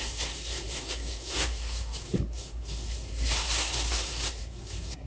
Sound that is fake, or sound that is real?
fake